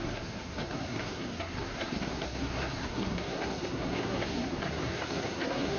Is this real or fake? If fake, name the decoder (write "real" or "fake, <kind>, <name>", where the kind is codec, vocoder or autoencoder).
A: fake, codec, SNAC